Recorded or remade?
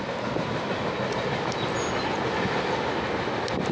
recorded